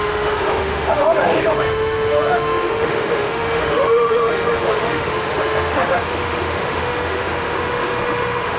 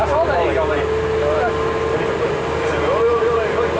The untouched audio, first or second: second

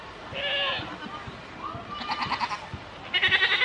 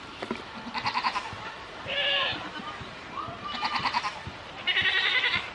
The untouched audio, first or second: first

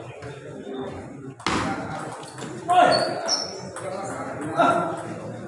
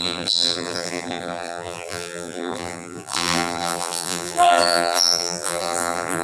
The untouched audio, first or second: first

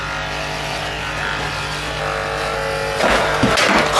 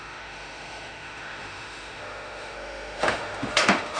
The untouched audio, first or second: first